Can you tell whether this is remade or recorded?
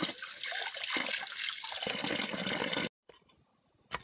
recorded